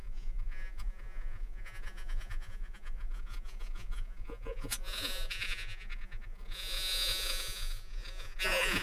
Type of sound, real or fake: fake